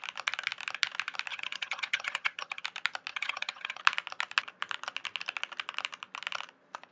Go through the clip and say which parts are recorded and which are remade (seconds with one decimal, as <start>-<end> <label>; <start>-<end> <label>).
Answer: 0.0-1.3 recorded; 1.3-2.6 remade; 2.6-3.1 recorded; 3.1-3.8 remade; 3.8-6.9 recorded